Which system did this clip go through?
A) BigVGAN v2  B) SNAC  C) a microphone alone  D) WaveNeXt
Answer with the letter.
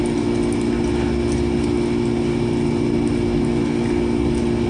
C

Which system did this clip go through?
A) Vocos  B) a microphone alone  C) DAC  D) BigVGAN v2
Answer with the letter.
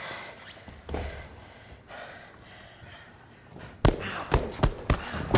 B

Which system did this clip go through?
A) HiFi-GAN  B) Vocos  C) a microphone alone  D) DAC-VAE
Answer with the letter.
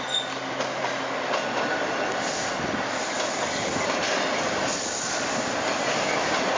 C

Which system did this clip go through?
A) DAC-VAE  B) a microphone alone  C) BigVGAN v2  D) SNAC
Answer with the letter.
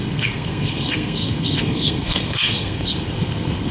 D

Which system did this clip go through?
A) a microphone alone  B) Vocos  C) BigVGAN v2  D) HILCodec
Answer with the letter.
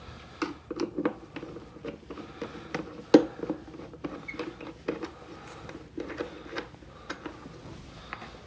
A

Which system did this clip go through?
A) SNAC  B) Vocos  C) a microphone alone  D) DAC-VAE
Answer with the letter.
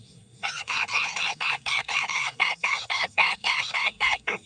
A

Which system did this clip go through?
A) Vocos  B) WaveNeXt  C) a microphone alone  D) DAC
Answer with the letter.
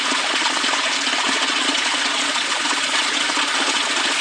A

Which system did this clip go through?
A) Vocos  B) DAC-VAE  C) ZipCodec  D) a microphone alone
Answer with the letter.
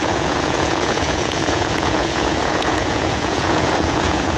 A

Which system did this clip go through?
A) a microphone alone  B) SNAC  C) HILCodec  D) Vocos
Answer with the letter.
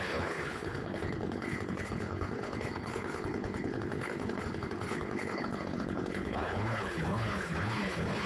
C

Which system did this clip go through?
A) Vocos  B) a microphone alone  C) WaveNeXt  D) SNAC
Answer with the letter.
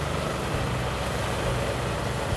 B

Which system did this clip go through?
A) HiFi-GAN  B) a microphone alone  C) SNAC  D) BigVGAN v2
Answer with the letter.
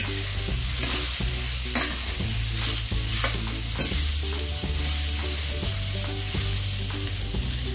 B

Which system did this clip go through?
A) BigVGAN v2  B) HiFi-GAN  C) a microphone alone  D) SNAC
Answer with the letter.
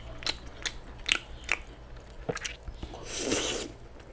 C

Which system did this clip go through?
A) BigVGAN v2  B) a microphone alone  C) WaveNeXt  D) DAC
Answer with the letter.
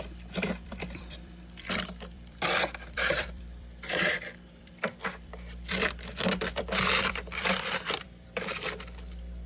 A